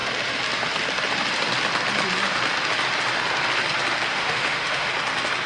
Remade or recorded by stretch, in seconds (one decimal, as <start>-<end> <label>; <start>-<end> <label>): 0.0-4.1 recorded; 4.1-4.9 remade; 4.9-5.5 recorded

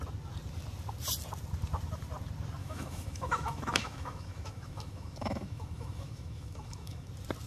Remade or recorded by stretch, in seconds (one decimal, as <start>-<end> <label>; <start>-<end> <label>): 0.0-2.6 recorded; 2.6-7.1 remade; 7.1-7.5 recorded

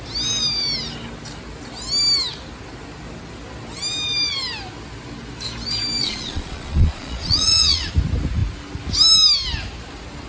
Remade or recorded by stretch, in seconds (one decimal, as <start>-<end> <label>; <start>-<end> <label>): 0.0-6.0 recorded; 6.0-7.9 remade; 7.9-10.3 recorded

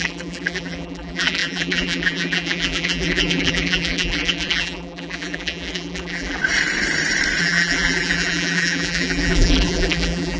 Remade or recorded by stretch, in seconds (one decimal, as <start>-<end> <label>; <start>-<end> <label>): 0.0-6.4 remade; 6.4-7.4 recorded; 7.4-10.4 remade